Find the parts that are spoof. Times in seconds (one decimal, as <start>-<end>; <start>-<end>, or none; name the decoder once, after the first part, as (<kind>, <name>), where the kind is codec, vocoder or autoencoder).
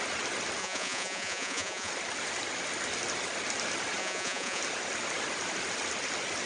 0.6-1.9 (vocoder, Vocos); 4.0-4.6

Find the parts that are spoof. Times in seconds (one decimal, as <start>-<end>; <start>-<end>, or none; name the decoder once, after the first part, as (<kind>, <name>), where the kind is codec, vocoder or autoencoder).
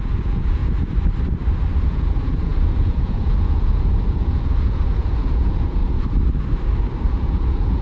0.0-0.6 (vocoder, Vocos); 1.8-5.8; 7.1-7.8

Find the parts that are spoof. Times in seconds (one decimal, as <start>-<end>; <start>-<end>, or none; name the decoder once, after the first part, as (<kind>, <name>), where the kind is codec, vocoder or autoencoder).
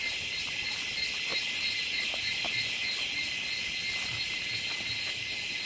none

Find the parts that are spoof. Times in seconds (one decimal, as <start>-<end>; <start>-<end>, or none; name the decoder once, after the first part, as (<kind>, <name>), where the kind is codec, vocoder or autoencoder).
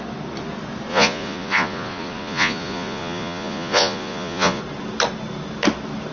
0.9-4.6 (vocoder, Vocos)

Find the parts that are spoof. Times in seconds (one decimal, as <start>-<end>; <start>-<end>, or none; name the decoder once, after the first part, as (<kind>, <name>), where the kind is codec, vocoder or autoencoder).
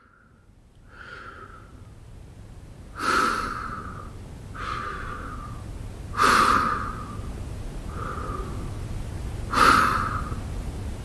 none